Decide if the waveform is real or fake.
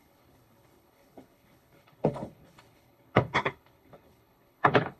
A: fake